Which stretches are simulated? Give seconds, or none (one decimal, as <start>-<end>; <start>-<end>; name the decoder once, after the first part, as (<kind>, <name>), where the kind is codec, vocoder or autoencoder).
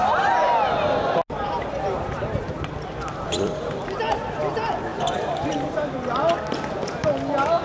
4.9-5.9 (vocoder, BigVGAN v2)